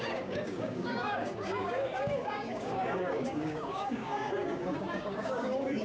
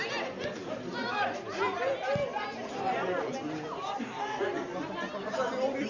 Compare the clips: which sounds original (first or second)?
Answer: second